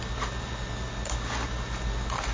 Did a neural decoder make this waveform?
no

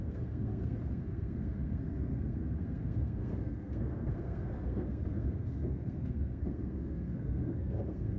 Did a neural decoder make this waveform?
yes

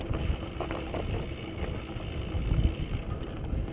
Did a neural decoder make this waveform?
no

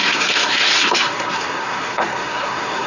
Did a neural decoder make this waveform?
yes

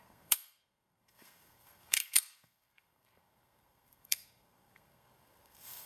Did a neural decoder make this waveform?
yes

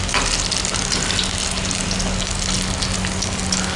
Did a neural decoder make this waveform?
no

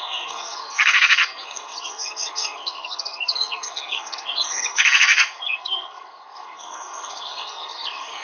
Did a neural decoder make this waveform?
yes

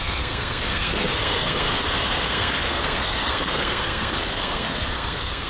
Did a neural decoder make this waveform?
yes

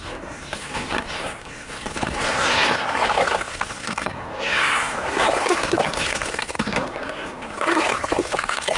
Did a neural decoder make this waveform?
yes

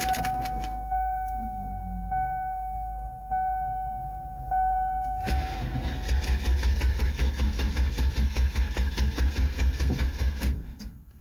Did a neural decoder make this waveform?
yes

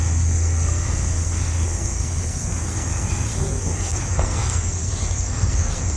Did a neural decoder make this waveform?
yes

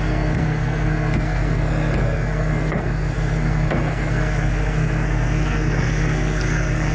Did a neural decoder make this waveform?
yes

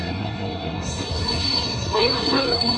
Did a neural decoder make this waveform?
yes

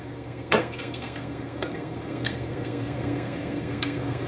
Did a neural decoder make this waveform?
yes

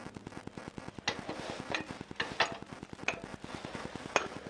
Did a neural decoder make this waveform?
no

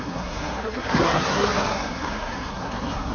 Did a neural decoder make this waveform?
yes